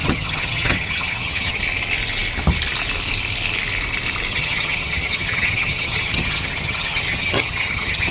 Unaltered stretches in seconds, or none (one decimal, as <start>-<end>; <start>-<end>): 1.6-4.3